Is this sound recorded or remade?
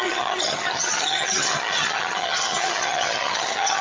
remade